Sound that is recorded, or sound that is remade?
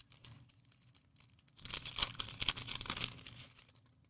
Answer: recorded